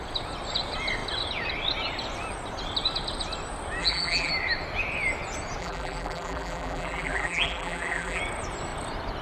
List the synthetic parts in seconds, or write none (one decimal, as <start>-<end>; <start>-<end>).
3.8-4.3; 5.6-8.2